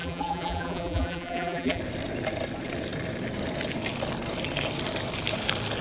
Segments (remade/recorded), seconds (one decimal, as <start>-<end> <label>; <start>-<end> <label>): 0.0-1.8 remade; 1.8-5.8 recorded